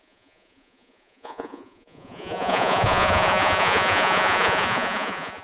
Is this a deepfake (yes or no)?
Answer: yes